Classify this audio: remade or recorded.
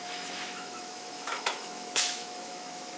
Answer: remade